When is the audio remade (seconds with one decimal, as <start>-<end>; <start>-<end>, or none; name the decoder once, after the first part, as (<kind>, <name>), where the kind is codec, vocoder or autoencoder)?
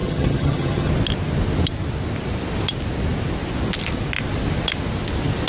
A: 0.0-0.9 (vocoder, HiFi-GAN)